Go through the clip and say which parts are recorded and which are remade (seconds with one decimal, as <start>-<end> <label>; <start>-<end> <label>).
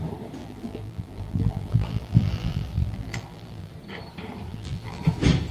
0.0-0.4 recorded; 0.4-3.7 remade; 3.7-4.5 recorded; 4.5-5.0 remade; 5.0-5.5 recorded